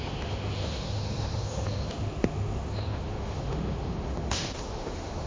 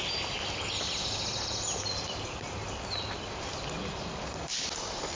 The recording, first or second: second